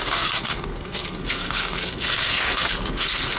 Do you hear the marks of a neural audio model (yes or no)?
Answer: yes